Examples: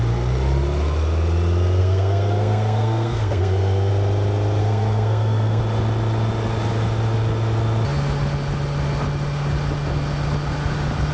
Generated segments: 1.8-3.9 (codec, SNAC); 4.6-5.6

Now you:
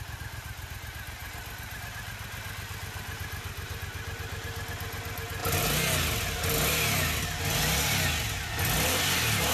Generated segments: none

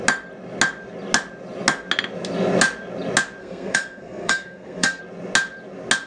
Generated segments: 3.4-5.0 (codec, SNAC)